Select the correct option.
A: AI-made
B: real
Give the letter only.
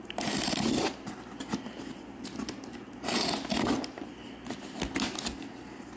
B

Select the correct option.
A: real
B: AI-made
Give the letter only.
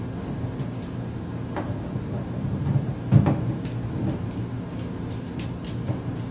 A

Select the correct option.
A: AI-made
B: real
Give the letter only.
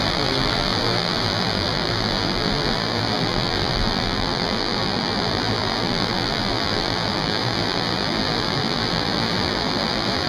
A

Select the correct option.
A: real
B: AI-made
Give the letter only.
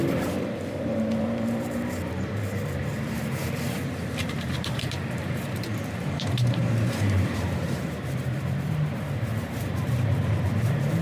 B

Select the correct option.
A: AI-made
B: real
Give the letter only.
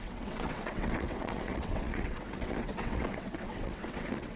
A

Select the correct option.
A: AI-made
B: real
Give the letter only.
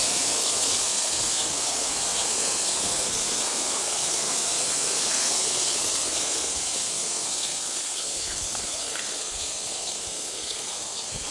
A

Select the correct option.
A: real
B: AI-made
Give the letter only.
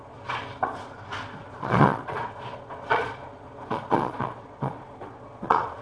B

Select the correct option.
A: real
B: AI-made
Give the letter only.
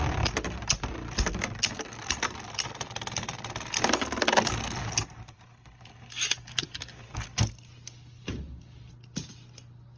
A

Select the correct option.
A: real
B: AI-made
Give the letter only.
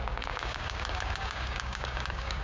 B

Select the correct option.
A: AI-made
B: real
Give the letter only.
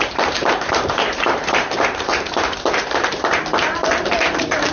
A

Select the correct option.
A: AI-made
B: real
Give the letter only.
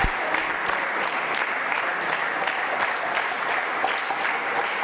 B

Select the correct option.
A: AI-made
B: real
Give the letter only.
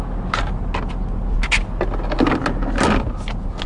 B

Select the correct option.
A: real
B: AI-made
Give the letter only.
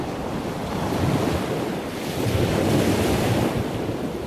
A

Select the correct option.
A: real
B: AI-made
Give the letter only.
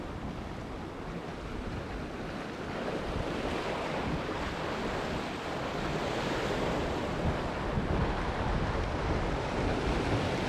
A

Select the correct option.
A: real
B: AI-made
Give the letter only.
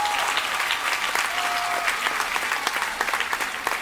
A